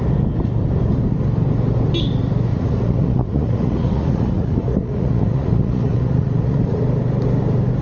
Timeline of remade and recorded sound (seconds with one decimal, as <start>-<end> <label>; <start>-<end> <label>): 0.0-2.5 recorded; 2.5-6.8 remade; 6.8-7.8 recorded